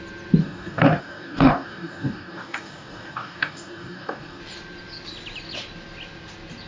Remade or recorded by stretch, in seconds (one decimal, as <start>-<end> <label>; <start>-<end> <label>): 0.0-0.4 recorded; 0.4-4.4 remade; 4.4-6.7 recorded